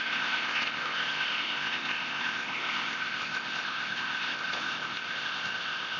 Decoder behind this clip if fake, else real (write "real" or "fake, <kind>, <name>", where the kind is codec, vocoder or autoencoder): fake, codec, ZipCodec